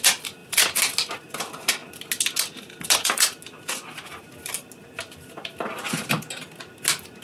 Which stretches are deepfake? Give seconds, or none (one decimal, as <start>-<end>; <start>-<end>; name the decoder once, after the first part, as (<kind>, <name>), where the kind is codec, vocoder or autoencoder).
none